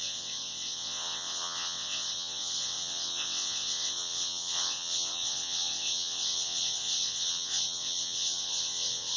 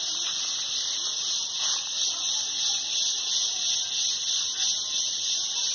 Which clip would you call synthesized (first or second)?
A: first